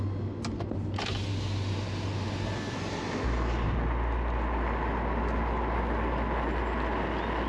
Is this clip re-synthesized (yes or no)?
no